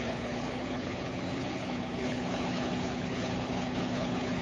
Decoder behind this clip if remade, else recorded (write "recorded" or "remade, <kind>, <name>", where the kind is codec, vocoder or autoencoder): remade, codec, HILCodec